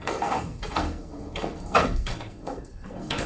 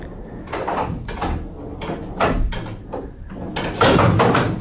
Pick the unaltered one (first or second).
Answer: second